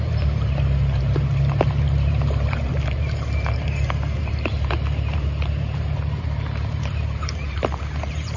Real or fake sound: fake